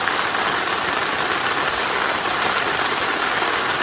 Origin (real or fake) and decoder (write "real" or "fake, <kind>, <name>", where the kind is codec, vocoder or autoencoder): real